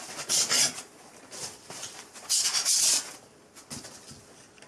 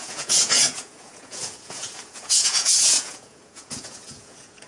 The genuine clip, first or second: first